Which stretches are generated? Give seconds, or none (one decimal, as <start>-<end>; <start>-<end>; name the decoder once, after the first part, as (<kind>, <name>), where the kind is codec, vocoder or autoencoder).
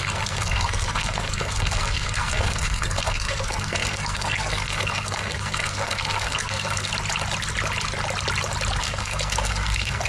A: 0.0-6.9 (codec, SNAC); 8.8-10.1